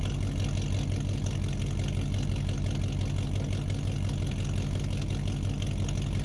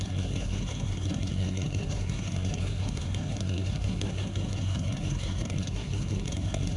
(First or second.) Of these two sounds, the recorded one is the first